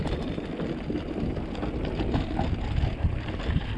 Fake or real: real